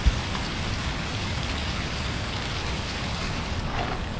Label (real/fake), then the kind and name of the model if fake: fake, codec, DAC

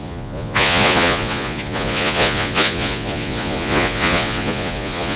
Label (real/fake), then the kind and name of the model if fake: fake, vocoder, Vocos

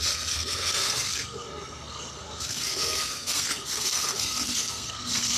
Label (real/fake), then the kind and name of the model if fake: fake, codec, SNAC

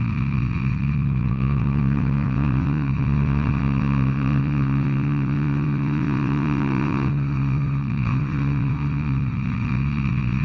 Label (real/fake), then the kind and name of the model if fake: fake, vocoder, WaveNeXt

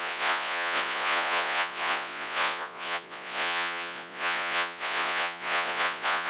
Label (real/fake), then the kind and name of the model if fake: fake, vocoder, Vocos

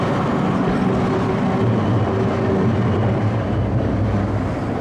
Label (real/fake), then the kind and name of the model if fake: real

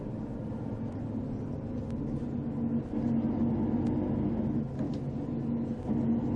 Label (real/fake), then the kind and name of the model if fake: real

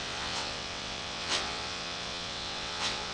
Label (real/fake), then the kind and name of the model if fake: fake, vocoder, WaveNeXt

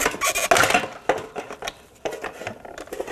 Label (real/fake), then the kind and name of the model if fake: real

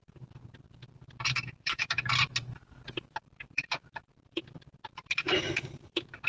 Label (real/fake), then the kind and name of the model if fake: fake, vocoder, BigVGAN v2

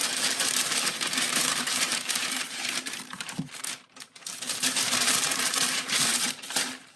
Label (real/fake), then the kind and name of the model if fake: fake, vocoder, BigVGAN v2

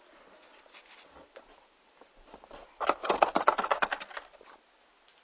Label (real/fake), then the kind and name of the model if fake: real